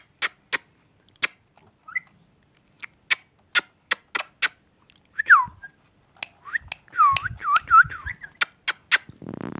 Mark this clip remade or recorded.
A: recorded